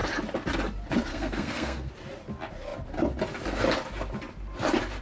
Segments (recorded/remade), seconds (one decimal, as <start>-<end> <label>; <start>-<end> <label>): 0.0-1.1 recorded; 1.1-1.9 remade; 1.9-5.0 recorded

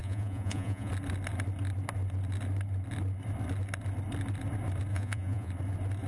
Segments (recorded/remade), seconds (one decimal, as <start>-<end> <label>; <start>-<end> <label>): 0.0-0.9 remade; 0.9-4.9 recorded; 4.9-5.5 remade; 5.5-6.1 recorded

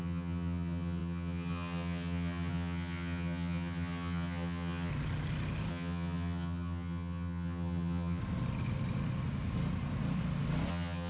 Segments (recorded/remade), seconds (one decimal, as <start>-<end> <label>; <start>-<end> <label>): 0.0-4.9 remade; 4.9-5.7 recorded; 5.7-8.2 remade; 8.2-10.7 recorded; 10.7-11.1 remade

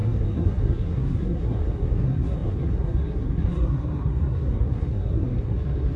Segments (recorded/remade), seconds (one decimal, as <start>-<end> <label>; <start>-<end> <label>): 0.0-6.0 remade

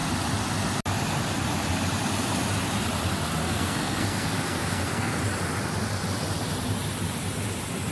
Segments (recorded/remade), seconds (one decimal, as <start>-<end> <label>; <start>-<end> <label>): 0.0-3.4 recorded; 3.4-5.2 remade; 5.2-7.9 recorded

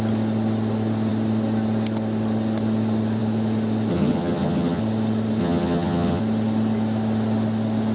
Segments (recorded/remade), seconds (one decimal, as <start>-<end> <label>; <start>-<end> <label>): 0.0-3.9 recorded; 3.9-4.8 remade; 4.8-5.4 recorded; 5.4-6.2 remade; 6.2-7.9 recorded

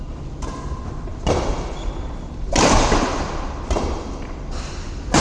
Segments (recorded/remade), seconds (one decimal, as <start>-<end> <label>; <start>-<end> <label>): 0.0-5.2 recorded

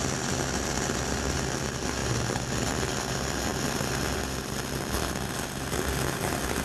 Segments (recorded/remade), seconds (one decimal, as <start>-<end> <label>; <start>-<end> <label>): 0.0-6.6 recorded